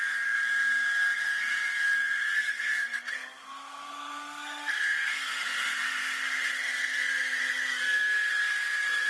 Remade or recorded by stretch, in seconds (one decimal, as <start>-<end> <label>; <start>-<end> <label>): 0.0-9.1 remade